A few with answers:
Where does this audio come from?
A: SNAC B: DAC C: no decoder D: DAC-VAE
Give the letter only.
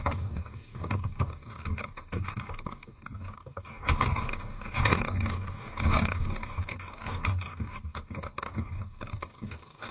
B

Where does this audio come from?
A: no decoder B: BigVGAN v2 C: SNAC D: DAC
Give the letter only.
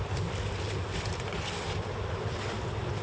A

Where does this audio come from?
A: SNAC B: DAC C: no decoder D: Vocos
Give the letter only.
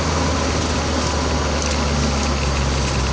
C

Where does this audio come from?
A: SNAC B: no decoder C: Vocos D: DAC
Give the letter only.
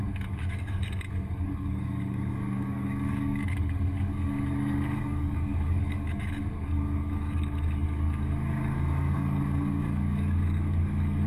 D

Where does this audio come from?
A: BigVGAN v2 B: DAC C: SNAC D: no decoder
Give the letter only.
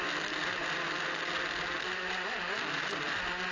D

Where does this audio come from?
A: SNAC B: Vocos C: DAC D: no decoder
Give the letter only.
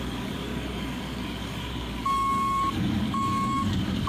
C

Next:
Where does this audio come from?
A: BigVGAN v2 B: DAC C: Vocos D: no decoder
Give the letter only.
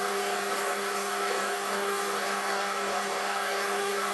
B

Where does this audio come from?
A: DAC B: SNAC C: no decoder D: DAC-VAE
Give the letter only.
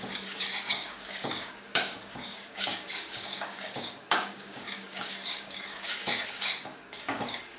A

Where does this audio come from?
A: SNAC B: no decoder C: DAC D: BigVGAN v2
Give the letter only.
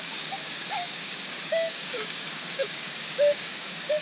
C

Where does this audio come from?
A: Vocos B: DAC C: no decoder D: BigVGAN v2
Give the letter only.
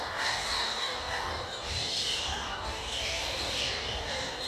B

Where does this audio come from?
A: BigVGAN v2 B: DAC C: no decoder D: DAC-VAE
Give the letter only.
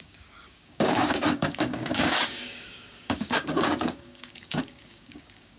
B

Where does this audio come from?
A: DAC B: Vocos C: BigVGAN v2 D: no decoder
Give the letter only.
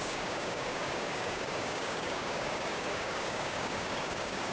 A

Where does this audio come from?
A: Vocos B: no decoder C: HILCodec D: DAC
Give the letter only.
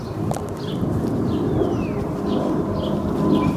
B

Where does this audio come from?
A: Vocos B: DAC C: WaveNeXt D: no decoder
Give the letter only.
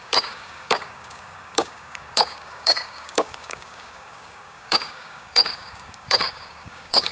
B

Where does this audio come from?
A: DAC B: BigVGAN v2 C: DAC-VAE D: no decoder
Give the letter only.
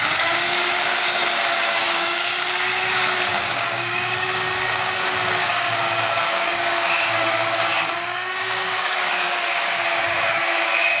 A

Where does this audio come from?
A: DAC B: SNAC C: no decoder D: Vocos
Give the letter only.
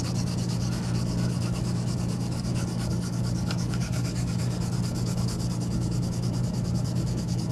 A